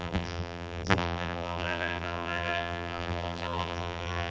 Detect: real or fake fake